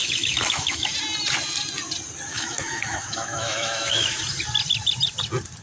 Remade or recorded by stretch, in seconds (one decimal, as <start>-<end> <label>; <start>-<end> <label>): 0.0-0.9 remade; 0.9-2.3 recorded; 2.3-4.2 remade; 4.2-5.6 recorded